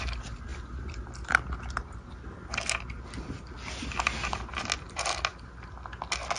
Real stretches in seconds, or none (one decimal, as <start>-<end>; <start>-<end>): 0.0-6.4